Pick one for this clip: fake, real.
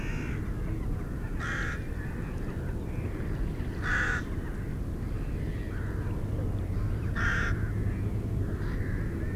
real